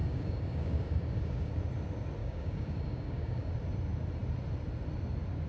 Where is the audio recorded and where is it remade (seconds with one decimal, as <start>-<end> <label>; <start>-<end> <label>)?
0.0-1.5 remade; 1.5-2.2 recorded; 2.2-3.5 remade; 3.5-5.5 recorded